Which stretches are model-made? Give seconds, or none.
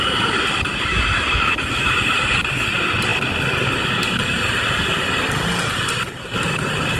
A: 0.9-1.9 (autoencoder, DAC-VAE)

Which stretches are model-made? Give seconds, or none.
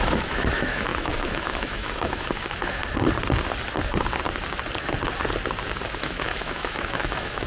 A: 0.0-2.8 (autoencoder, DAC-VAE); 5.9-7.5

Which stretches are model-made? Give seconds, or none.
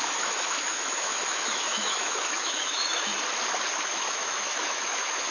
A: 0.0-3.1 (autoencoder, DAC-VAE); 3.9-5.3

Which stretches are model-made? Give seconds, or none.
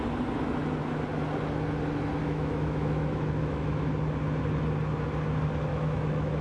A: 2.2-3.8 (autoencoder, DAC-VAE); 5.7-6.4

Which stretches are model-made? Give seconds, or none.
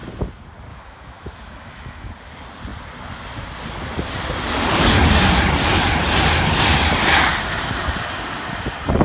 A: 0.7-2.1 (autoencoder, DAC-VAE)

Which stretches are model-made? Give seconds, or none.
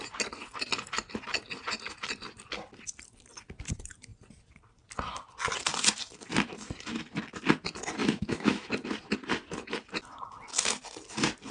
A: 8.0-8.7 (autoencoder, DAC-VAE)